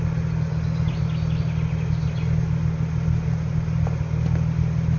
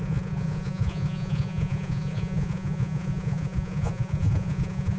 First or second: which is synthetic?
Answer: second